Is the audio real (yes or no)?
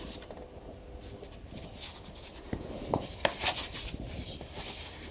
yes